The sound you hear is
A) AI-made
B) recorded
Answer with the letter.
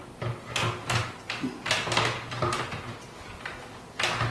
B